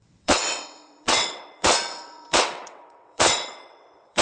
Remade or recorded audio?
remade